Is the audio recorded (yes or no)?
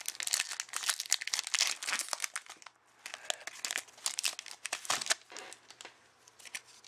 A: yes